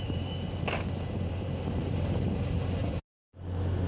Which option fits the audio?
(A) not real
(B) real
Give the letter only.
B